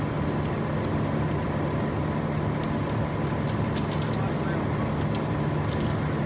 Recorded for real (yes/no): yes